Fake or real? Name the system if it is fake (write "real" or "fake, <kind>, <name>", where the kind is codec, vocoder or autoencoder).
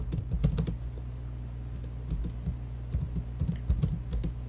real